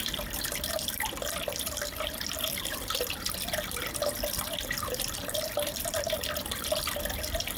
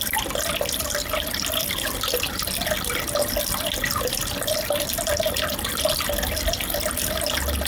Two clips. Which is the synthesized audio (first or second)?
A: first